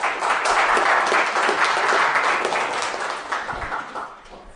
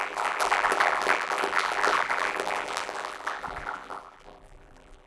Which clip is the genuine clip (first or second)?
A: first